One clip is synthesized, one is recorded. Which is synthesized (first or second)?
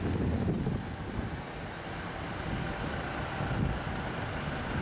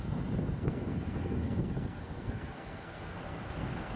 second